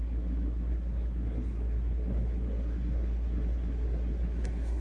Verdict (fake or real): fake